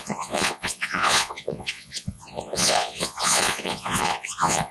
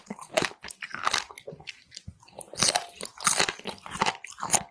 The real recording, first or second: second